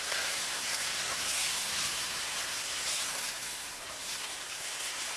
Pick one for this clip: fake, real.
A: fake